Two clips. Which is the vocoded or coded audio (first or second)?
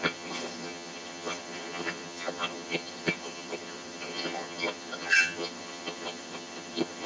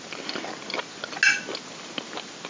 first